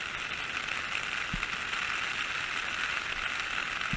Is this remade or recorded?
recorded